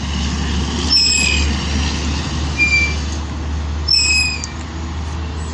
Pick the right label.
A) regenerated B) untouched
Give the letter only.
B